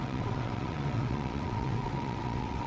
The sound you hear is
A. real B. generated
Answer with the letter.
B